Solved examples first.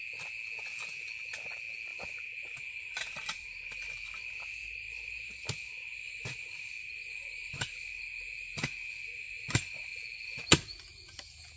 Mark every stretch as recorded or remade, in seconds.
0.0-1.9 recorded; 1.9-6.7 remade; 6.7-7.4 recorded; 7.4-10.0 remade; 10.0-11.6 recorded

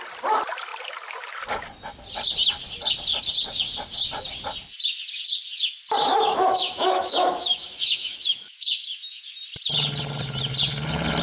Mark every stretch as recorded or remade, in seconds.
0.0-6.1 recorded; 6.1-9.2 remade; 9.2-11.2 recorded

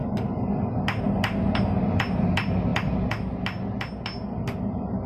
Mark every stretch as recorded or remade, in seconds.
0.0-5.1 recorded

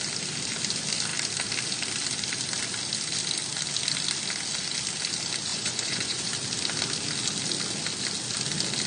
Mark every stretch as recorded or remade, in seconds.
0.0-5.5 recorded; 5.5-6.3 remade; 6.3-8.9 recorded